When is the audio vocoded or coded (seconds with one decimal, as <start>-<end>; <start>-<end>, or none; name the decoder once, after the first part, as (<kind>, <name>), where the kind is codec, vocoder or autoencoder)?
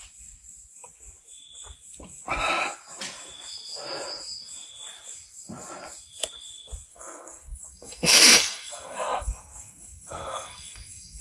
6.9-11.2 (codec, SNAC)